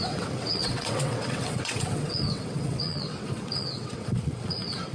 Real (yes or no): no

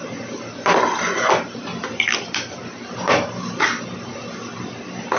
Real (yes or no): yes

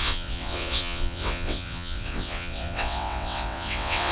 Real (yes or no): no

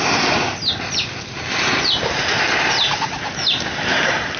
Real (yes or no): yes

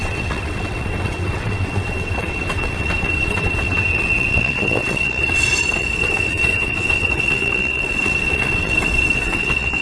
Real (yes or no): no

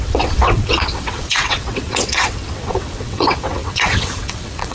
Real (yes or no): no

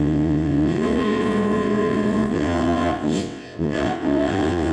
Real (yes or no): no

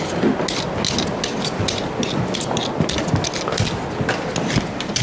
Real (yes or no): yes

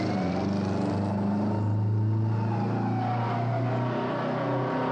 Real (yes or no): yes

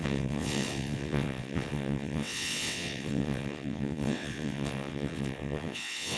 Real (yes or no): no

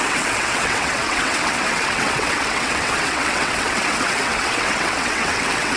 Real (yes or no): no